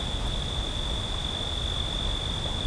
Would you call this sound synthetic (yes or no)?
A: no